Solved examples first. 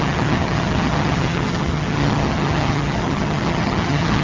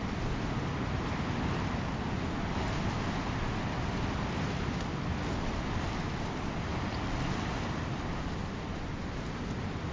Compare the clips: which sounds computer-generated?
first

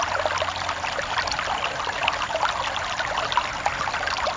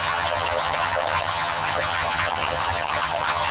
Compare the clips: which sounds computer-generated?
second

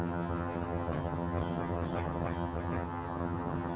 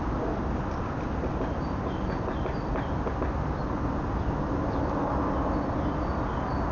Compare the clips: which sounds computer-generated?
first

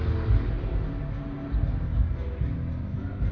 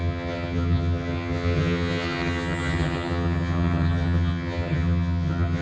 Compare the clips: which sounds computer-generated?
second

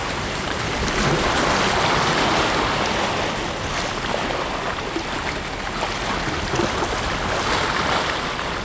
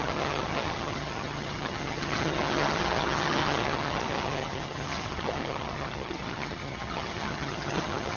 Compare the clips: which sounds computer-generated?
second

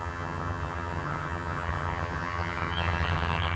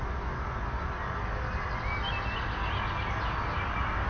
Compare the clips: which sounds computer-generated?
first